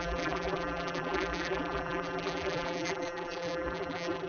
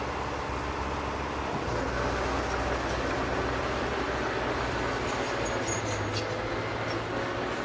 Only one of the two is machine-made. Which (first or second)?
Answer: first